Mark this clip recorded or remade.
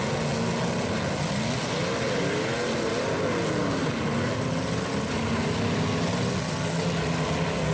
recorded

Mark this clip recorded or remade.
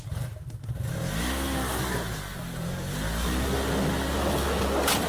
recorded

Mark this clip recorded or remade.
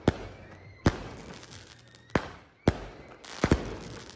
recorded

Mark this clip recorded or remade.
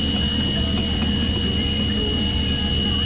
recorded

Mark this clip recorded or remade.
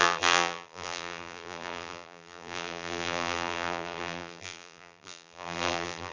remade